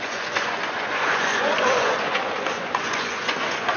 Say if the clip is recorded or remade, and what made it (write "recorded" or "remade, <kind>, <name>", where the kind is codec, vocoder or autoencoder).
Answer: remade, vocoder, Vocos